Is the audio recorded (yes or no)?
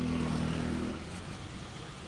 yes